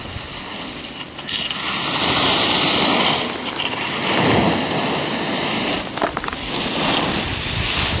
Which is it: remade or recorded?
recorded